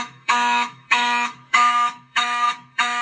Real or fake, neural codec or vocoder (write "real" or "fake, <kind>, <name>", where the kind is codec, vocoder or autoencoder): fake, autoencoder, DAC-VAE